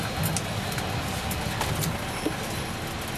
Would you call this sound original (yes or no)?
yes